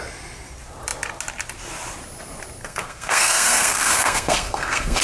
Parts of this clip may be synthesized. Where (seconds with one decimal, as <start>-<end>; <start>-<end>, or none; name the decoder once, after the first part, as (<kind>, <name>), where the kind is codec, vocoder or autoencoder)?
2.6-5.0 (codec, SNAC)